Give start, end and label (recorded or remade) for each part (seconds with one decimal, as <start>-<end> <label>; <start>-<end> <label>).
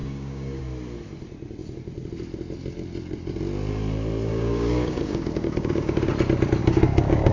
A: 0.0-0.6 remade; 0.6-4.3 recorded; 4.3-6.1 remade; 6.1-6.6 recorded; 6.6-7.3 remade